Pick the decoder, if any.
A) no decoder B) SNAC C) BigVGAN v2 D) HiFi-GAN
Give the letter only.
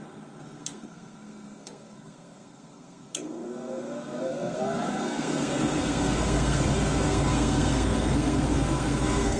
B